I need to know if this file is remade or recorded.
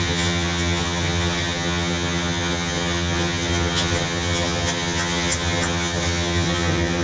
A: remade